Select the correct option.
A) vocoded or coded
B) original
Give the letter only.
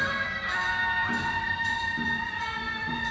A